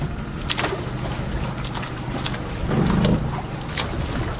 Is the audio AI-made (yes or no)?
no